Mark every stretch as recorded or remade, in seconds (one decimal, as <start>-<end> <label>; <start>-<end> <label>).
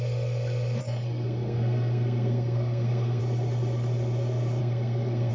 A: 0.0-0.8 recorded; 0.8-3.2 remade; 3.2-4.6 recorded; 4.6-5.3 remade